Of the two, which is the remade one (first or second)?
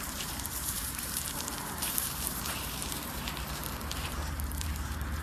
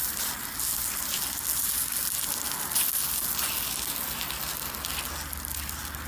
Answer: first